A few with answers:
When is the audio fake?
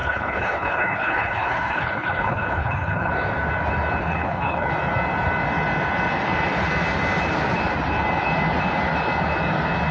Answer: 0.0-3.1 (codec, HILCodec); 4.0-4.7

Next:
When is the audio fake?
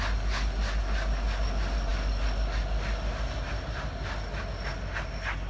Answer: none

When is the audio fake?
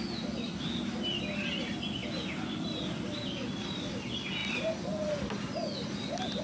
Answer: none